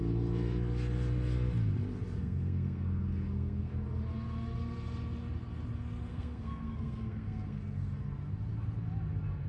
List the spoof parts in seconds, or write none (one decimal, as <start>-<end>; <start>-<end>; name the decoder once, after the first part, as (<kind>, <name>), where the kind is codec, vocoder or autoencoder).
2.2-3.7 (codec, SNAC); 6.1-8.0